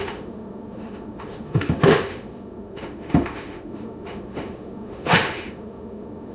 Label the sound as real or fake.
fake